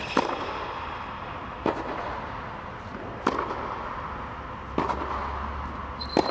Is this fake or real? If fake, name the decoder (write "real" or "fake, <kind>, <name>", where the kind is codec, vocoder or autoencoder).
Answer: real